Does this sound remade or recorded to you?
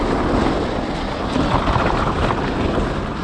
recorded